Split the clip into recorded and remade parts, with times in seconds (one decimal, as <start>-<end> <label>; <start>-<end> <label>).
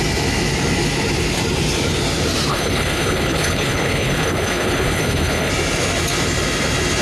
0.0-2.5 recorded; 2.5-5.5 remade; 5.5-7.0 recorded